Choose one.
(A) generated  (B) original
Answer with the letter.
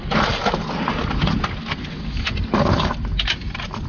B